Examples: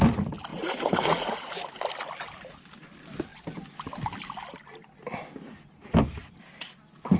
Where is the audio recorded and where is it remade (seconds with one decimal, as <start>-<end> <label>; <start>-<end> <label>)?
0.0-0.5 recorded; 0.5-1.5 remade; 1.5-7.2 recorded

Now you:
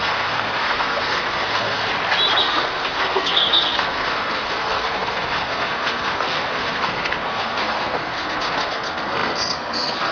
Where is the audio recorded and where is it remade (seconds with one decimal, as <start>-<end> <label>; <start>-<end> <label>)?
0.0-1.9 remade; 1.9-2.4 recorded; 2.4-10.1 remade

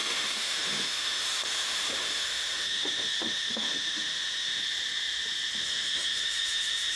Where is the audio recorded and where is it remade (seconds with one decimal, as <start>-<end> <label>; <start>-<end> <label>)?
0.0-4.6 remade; 4.6-5.6 recorded; 5.6-7.0 remade